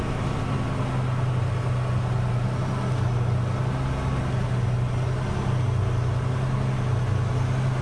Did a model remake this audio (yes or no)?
no